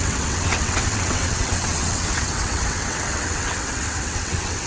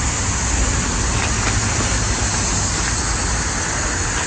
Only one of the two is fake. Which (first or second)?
first